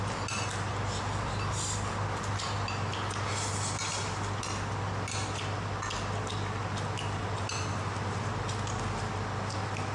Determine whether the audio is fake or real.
real